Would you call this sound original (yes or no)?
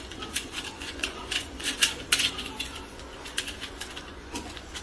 no